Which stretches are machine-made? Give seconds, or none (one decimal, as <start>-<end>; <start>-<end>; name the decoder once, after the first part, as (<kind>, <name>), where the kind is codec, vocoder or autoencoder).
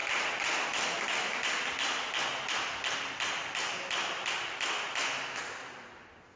none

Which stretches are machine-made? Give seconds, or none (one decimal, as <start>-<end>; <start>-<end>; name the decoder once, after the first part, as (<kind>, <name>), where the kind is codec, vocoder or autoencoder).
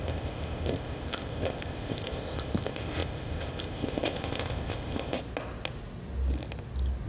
0.0-5.2 (codec, ZipCodec)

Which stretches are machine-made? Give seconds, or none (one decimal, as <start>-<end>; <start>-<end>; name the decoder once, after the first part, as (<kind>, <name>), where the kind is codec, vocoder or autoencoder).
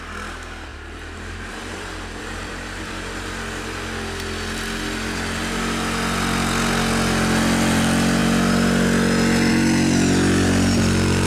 0.7-2.9 (vocoder, BigVGAN v2)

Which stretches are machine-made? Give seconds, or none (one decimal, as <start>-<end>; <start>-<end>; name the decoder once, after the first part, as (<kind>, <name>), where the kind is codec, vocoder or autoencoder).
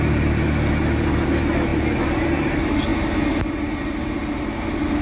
none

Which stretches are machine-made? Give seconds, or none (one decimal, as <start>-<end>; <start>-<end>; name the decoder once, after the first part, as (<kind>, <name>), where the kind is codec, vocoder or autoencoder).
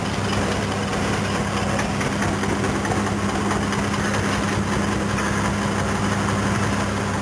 none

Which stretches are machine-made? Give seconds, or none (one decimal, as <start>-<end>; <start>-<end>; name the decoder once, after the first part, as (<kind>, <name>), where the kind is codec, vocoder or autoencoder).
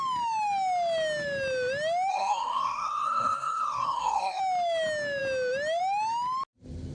2.1-4.4 (codec, SNAC)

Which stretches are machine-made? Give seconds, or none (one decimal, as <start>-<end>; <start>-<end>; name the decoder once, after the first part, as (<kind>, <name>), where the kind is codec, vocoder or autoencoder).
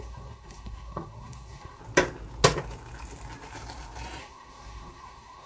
0.0-1.8 (codec, SNAC); 4.2-5.5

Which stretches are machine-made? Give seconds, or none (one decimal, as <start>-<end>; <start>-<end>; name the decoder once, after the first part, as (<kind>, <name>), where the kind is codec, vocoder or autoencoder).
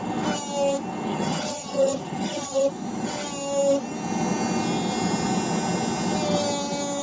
1.1-2.7 (vocoder, HiFi-GAN)